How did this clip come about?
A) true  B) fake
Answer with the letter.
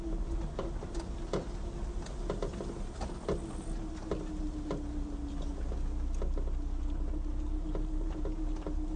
A